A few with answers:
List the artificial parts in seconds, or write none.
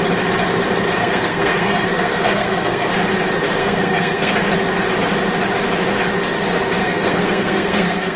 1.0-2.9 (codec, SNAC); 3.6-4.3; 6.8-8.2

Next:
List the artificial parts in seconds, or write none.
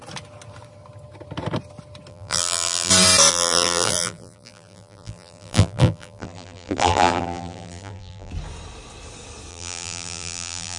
2.1-2.9 (vocoder, BigVGAN v2); 3.3-8.3; 9.5-10.8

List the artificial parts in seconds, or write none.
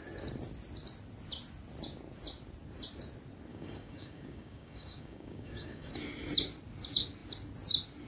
3.5-5.9 (codec, DAC)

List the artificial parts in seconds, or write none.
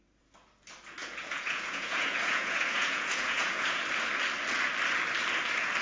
1.0-3.8 (vocoder, Vocos)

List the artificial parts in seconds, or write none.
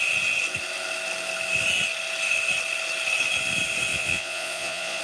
3.9-5.0 (vocoder, Vocos)